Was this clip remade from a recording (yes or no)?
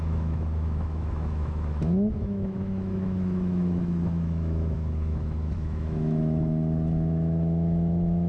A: yes